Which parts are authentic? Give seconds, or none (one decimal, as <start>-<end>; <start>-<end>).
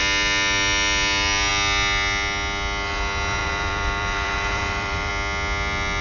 0.0-3.4; 5.1-6.0